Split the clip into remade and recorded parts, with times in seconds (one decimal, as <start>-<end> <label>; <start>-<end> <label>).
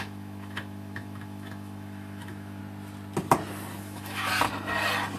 0.0-2.6 remade; 2.6-3.8 recorded; 3.8-4.3 remade; 4.3-5.2 recorded